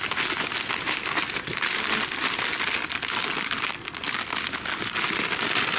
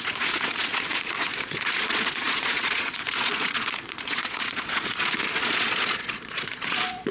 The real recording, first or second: first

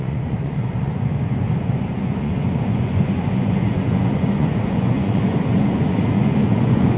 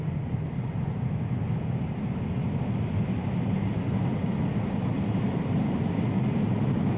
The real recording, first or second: second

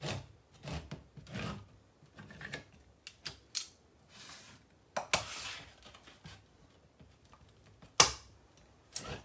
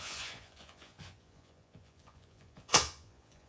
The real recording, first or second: first